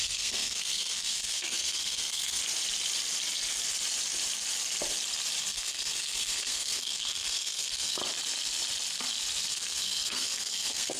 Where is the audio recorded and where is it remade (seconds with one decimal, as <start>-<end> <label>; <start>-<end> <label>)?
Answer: 0.0-2.4 remade; 2.4-5.4 recorded; 5.4-8.0 remade; 8.0-9.5 recorded; 9.5-11.0 remade